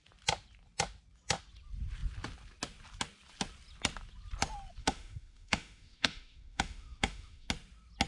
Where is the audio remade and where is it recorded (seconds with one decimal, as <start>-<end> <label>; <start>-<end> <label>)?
0.0-4.8 recorded; 4.8-7.5 remade; 7.5-8.1 recorded